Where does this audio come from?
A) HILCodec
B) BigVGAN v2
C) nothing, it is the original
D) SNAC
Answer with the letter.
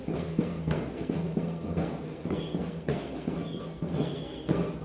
D